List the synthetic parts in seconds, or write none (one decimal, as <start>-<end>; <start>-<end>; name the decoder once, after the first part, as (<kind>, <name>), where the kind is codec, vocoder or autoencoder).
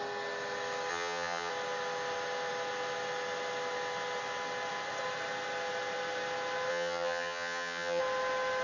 0.9-1.5 (vocoder, HiFi-GAN); 6.7-8.0